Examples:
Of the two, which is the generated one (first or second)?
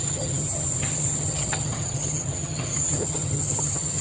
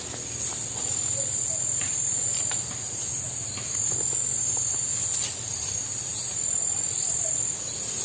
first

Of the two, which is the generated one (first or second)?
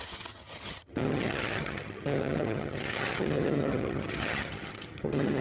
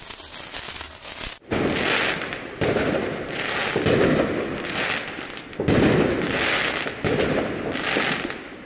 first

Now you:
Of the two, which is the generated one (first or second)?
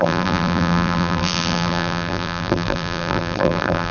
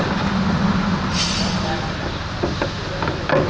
first